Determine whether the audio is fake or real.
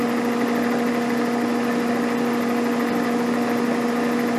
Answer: real